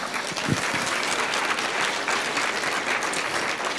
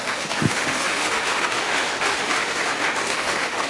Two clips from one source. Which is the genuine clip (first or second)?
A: first